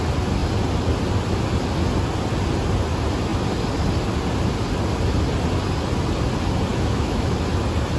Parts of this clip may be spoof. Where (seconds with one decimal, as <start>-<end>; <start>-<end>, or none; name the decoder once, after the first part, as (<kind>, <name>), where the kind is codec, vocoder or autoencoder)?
6.7-7.3 (autoencoder, DAC-VAE)

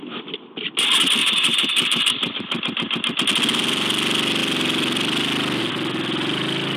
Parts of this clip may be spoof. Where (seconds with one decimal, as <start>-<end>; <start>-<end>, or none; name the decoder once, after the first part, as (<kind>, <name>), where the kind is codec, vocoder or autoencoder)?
1.2-2.2 (vocoder, BigVGAN v2)

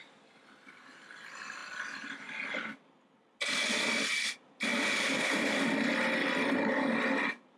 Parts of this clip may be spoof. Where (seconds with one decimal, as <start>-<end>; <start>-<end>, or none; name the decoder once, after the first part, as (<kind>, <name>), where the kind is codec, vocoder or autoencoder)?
none

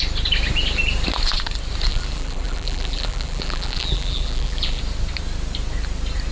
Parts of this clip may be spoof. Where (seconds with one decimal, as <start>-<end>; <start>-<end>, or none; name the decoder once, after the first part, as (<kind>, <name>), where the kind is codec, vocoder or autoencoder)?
1.9-4.8 (vocoder, BigVGAN v2)

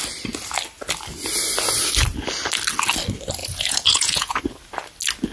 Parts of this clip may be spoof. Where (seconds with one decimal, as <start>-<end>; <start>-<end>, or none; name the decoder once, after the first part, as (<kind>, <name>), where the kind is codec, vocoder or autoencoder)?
3.4-4.4 (vocoder, Vocos)

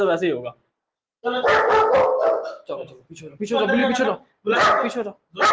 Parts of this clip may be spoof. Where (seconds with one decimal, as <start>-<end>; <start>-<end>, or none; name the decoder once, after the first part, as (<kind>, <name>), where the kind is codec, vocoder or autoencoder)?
none

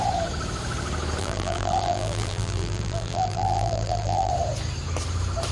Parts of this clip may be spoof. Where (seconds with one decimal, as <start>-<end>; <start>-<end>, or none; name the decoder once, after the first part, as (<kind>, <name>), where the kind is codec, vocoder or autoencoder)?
1.2-4.3 (vocoder, BigVGAN v2)

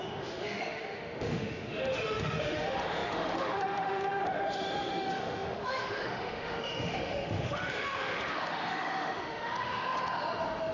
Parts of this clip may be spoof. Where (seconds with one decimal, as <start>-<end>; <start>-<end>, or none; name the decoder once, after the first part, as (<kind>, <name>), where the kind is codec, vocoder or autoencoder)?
0.0-10.7 (autoencoder, DAC-VAE)